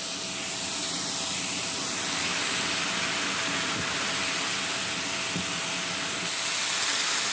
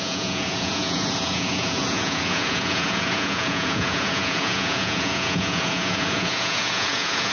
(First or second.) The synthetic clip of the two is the second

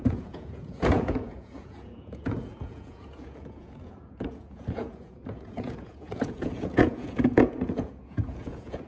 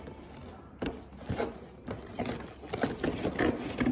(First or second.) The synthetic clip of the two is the first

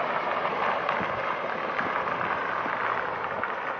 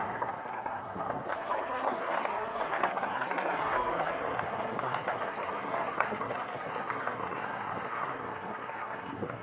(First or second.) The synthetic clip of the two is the second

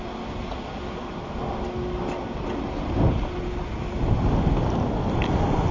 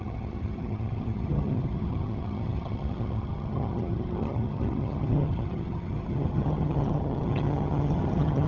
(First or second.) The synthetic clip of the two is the second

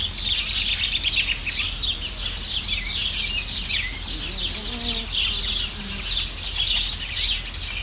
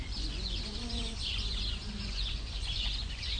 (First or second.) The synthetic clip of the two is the second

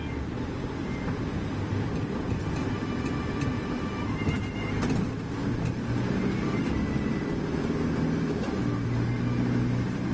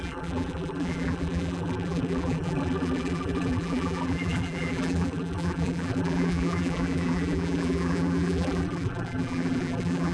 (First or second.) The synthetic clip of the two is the second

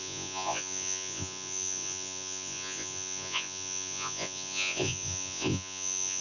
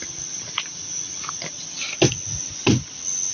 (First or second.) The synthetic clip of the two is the first